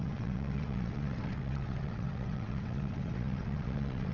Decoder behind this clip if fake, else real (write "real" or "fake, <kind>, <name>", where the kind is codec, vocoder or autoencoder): fake, vocoder, WaveNeXt